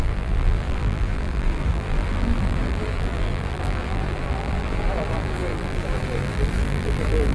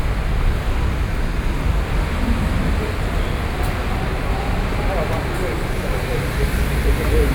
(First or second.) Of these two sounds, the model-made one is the first